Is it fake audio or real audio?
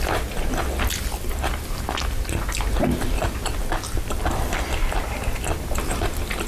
real